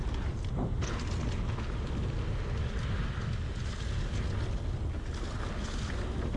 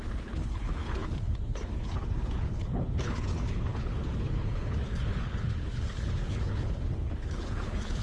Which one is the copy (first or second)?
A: second